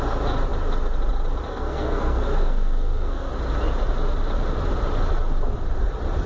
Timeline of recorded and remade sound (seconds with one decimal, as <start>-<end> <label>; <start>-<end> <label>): 0.0-1.5 recorded; 1.5-3.3 remade; 3.3-6.3 recorded

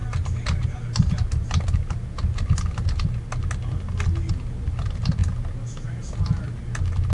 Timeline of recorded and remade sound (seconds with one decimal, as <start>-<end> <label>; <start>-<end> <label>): 0.0-7.1 recorded

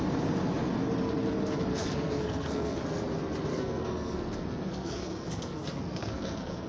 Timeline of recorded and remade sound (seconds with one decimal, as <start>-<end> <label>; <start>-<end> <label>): 0.0-1.7 recorded; 1.7-2.8 remade; 2.8-3.5 recorded; 3.5-6.7 remade

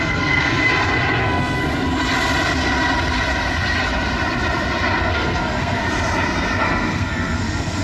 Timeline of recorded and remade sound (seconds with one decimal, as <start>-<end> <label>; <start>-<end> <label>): 0.0-0.6 remade; 0.6-1.2 recorded; 1.2-1.6 remade; 1.6-5.0 recorded; 5.0-5.8 remade; 5.8-6.6 recorded; 6.6-7.8 remade

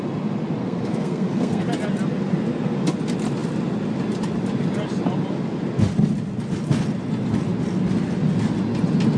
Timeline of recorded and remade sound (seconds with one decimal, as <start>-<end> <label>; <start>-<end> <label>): 0.0-0.6 recorded; 0.6-1.6 remade; 1.6-9.2 recorded

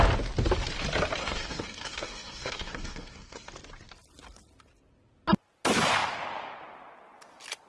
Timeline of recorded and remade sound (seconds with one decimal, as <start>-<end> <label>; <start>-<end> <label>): 0.0-1.2 recorded; 1.2-3.5 remade; 3.5-7.7 recorded